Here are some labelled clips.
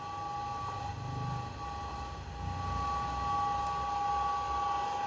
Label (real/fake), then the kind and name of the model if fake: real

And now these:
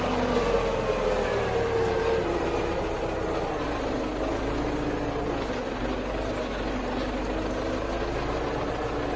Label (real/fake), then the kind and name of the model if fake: real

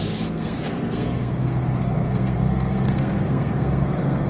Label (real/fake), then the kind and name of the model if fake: fake, codec, SNAC